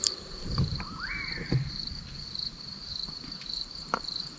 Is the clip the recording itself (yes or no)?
no